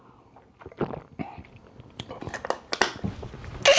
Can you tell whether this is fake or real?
real